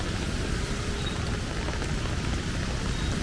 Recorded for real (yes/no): yes